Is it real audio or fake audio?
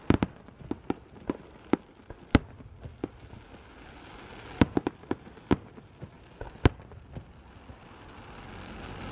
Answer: real